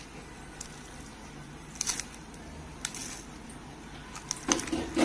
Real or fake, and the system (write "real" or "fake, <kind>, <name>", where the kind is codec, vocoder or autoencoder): real